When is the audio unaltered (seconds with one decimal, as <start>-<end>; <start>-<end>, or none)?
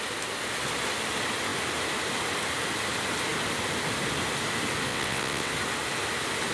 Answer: 0.0-4.9; 5.5-6.5